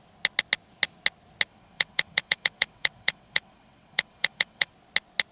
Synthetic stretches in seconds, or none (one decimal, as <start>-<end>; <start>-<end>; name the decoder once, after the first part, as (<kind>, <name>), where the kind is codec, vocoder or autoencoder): 1.5-4.7 (vocoder, WaveNeXt)